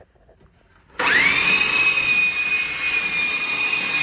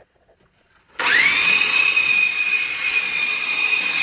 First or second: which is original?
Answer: first